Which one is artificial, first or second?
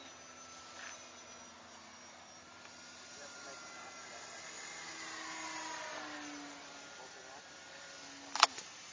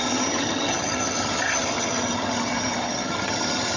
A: second